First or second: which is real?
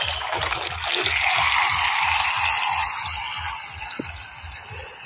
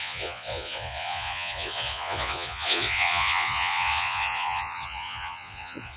first